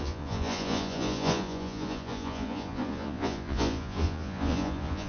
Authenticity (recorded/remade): remade